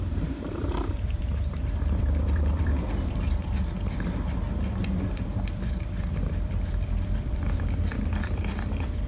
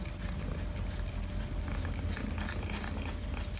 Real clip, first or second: second